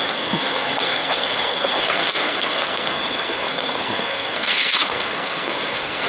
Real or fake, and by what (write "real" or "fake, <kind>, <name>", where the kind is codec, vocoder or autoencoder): fake, codec, SNAC